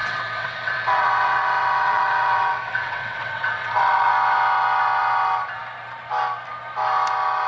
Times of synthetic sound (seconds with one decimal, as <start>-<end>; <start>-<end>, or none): 0.0-4.1